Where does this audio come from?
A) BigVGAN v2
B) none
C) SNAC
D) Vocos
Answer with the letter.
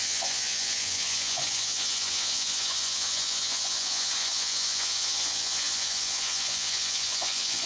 D